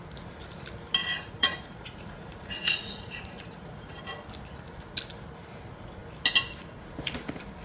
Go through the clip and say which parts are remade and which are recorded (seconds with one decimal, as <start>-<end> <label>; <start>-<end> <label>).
0.0-1.0 recorded; 1.0-4.0 remade; 4.0-7.6 recorded